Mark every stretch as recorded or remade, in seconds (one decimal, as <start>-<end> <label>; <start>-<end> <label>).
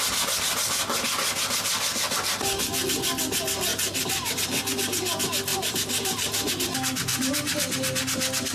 0.0-3.7 recorded; 3.7-4.8 remade; 4.8-5.5 recorded; 5.5-6.5 remade; 6.5-8.5 recorded